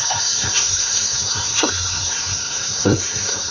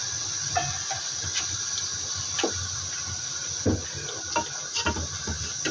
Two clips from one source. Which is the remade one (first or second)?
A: first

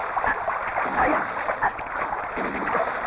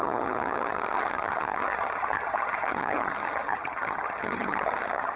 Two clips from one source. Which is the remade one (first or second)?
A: second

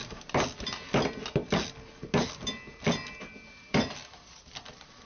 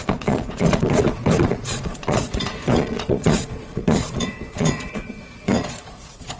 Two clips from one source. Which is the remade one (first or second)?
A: second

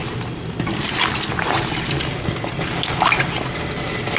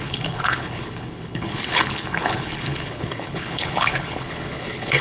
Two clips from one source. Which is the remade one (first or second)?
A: second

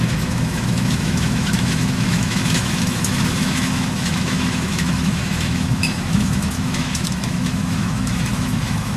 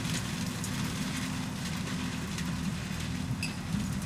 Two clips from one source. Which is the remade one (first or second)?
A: first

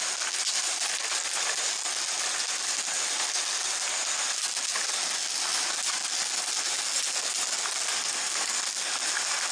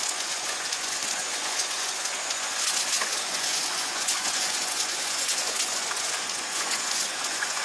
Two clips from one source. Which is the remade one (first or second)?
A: second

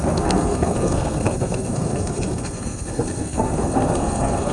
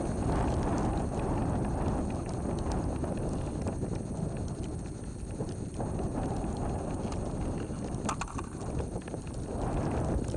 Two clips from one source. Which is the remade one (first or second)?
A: first